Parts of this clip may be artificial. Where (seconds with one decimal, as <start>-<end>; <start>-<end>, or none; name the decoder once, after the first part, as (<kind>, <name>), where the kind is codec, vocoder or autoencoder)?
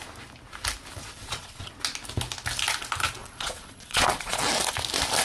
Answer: 1.0-1.7 (vocoder, Vocos); 3.2-4.4